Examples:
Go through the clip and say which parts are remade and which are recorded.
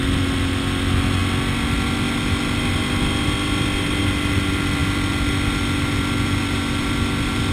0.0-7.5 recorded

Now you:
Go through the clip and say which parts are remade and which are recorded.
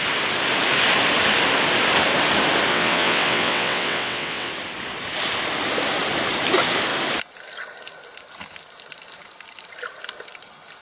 0.0-2.7 recorded; 2.7-4.5 remade; 4.5-10.8 recorded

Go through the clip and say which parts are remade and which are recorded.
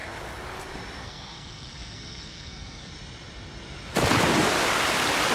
0.0-1.0 recorded; 1.0-2.9 remade; 2.9-5.3 recorded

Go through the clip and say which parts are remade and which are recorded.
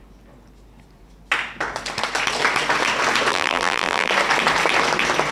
0.0-3.3 recorded; 3.3-4.1 remade; 4.1-5.3 recorded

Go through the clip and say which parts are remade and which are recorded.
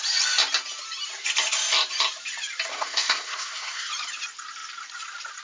0.0-2.7 recorded; 2.7-3.9 remade; 3.9-5.4 recorded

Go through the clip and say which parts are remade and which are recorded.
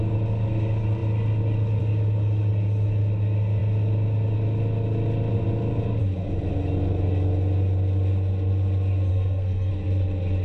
0.0-9.1 recorded; 9.1-9.7 remade; 9.7-10.4 recorded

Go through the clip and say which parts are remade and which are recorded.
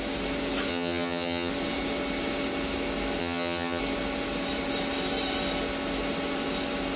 0.0-0.7 recorded; 0.7-1.5 remade; 1.5-3.2 recorded; 3.2-3.8 remade; 3.8-7.0 recorded